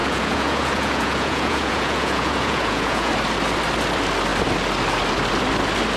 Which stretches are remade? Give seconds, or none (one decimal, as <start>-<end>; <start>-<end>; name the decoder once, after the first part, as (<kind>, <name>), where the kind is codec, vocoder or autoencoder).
0.0-3.1 (vocoder, Vocos)